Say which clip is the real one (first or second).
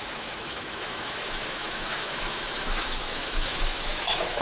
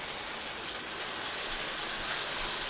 second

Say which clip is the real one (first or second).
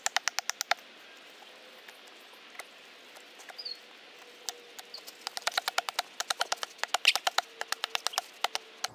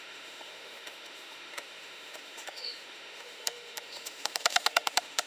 first